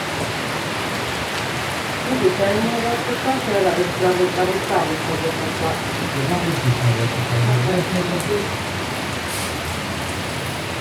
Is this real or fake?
real